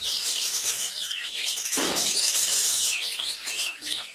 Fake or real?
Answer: fake